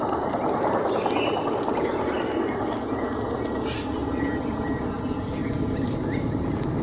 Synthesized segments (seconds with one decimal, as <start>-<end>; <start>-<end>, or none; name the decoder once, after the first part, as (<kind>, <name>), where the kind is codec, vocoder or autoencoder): none

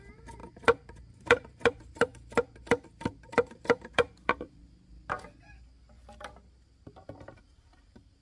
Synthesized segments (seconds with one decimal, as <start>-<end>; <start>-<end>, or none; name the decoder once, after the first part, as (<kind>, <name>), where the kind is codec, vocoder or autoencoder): 0.0-2.1 (vocoder, BigVGAN v2); 3.3-4.6; 7.2-8.2

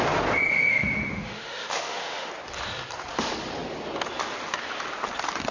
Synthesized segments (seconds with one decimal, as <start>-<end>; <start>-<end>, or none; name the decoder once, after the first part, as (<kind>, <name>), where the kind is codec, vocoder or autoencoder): 0.5-2.3 (autoencoder, DAC-VAE)

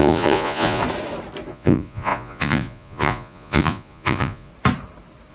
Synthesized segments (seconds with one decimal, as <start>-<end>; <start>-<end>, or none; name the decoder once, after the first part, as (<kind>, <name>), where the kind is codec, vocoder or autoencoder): 0.0-0.8 (vocoder, Vocos); 1.5-4.5

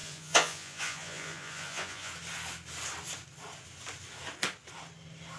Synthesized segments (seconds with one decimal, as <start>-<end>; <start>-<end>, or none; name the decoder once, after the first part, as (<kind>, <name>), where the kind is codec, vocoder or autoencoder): 0.0-2.1 (vocoder, Vocos)

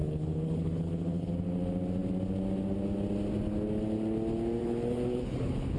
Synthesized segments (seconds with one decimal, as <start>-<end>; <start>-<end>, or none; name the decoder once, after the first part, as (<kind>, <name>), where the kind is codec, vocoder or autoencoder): 0.0-1.3 (codec, HILCodec); 4.6-5.8

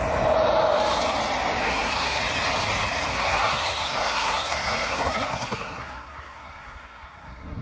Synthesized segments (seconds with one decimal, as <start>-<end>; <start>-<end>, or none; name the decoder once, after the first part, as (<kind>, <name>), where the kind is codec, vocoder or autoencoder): 1.6-2.2 (codec, SNAC); 3.1-7.6

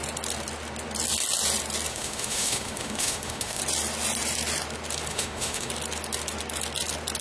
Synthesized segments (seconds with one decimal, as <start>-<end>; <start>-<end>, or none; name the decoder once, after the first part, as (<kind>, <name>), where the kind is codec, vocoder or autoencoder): 1.9-3.6 (autoencoder, DAC-VAE); 5.1-5.7